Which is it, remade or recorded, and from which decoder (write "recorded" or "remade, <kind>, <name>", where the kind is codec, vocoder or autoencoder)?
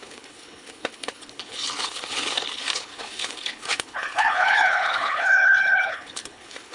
remade, codec, HILCodec